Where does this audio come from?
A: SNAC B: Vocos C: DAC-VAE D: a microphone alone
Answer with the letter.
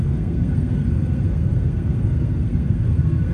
A